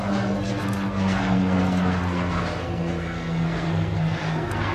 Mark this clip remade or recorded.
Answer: remade